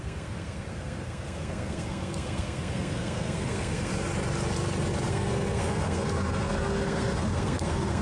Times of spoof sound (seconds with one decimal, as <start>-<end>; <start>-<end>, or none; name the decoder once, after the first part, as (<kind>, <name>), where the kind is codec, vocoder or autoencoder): 0.0-3.9 (codec, SNAC); 5.1-8.0